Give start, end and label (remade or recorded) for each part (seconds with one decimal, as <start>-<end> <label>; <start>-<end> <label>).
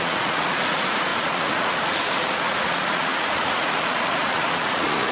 0.0-5.1 remade